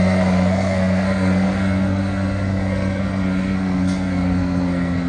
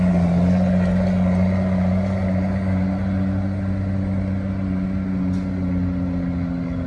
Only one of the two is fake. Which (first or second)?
first